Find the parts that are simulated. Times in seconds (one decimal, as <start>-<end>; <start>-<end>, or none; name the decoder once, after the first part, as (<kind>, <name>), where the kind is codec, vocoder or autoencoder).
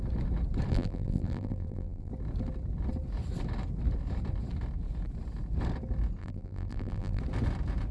0.7-2.1 (vocoder, BigVGAN v2); 6.2-7.2